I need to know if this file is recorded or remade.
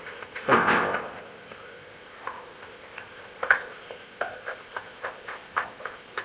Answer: remade